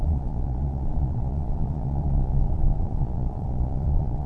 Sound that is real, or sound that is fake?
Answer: fake